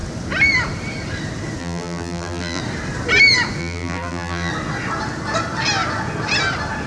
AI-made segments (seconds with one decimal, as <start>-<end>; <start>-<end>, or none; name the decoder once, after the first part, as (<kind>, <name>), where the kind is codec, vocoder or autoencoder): 1.6-2.6 (vocoder, BigVGAN v2); 3.6-4.5